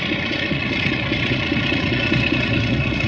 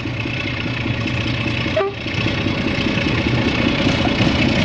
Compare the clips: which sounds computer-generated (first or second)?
first